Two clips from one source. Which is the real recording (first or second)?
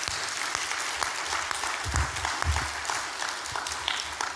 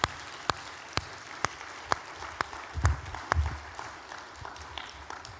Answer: first